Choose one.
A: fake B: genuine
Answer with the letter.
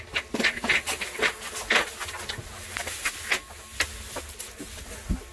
B